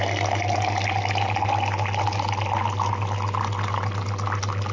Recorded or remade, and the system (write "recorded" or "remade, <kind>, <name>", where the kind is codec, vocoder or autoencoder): recorded